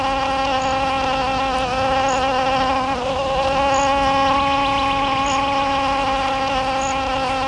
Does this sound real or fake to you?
real